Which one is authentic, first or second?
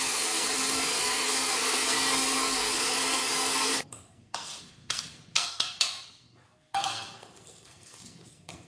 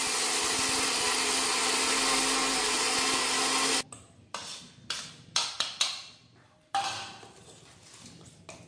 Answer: second